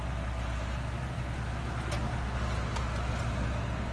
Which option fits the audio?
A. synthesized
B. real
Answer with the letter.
B